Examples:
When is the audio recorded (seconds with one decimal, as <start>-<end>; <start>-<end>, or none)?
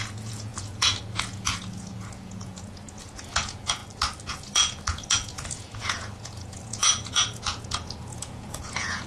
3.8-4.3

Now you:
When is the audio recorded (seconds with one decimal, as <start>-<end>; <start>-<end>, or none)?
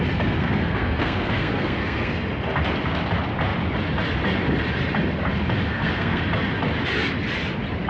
0.0-0.4; 2.1-5.7; 6.2-7.9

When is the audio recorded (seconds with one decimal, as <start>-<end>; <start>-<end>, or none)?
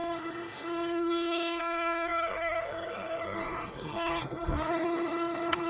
none